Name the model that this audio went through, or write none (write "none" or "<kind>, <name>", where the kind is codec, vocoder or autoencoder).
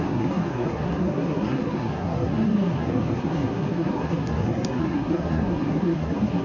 codec, SNAC